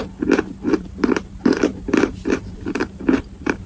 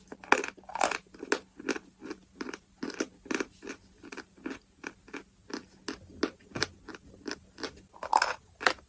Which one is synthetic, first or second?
first